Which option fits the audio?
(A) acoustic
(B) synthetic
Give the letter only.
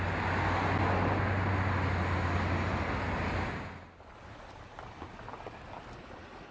A